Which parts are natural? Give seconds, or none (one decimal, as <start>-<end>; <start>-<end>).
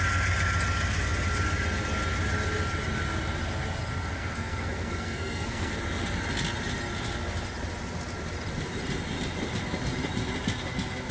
0.0-4.0; 5.7-11.1